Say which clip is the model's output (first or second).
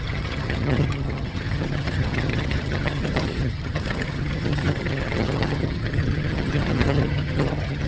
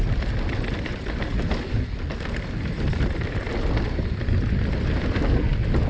first